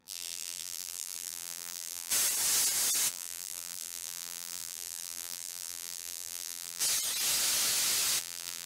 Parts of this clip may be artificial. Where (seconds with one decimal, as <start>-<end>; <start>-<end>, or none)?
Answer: 0.0-2.1; 3.1-6.8; 8.2-8.7